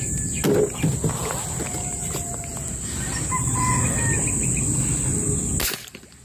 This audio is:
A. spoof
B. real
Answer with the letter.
B